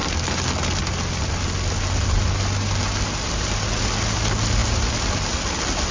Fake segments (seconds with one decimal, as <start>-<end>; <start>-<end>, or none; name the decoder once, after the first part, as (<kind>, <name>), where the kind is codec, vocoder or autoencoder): none

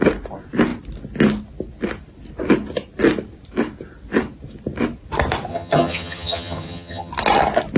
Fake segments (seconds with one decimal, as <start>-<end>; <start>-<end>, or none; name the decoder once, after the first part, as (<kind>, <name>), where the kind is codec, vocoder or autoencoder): 5.5-7.1 (vocoder, HiFi-GAN)

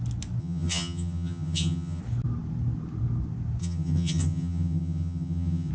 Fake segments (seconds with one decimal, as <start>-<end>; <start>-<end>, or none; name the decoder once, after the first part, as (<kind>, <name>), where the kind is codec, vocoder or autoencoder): 0.4-2.0 (vocoder, HiFi-GAN); 3.6-5.7

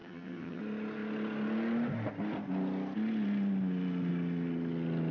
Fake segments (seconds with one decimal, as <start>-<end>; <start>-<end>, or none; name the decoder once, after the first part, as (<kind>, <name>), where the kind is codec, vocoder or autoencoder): 0.0-0.6 (vocoder, HiFi-GAN)

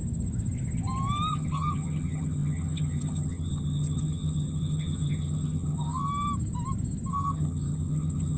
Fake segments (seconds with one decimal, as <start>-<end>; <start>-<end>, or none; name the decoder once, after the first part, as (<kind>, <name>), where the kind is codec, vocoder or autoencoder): 1.3-6.1 (vocoder, HiFi-GAN); 7.1-8.4

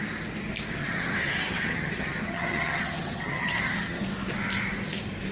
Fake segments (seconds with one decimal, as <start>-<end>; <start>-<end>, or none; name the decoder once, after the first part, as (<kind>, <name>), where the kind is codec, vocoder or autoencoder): 0.8-4.0 (vocoder, HiFi-GAN)